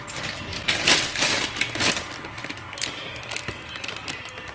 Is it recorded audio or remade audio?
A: recorded